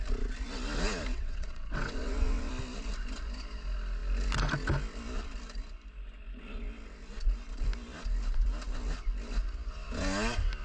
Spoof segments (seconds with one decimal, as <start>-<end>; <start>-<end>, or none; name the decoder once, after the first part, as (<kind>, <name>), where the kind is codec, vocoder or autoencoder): 1.1-2.5 (vocoder, WaveNeXt)